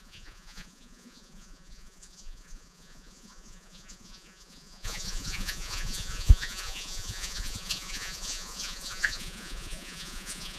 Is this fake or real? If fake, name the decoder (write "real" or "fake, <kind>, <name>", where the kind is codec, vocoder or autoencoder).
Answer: fake, vocoder, Vocos